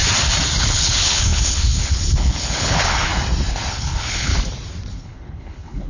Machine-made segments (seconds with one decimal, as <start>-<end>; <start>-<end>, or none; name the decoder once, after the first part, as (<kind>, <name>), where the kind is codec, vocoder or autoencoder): 0.6-3.1 (codec, HILCodec); 3.7-4.3; 4.9-5.9